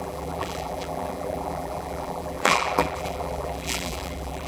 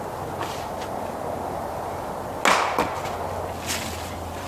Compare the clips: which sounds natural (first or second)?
second